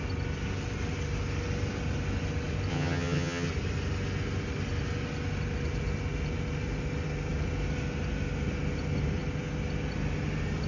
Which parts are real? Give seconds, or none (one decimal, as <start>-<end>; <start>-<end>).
0.0-2.7; 3.5-10.7

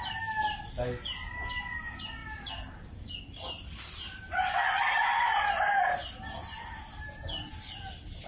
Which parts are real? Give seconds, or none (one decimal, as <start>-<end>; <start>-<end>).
0.0-8.3